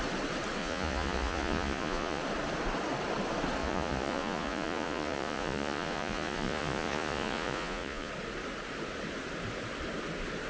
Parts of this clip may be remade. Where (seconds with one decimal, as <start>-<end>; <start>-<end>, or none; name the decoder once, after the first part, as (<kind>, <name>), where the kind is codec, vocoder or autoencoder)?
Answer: 0.6-2.2 (vocoder, Vocos); 3.6-8.1